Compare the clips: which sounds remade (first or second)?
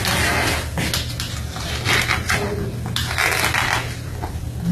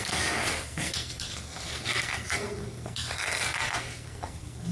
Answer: second